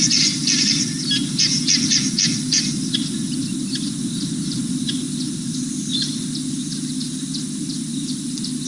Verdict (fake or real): real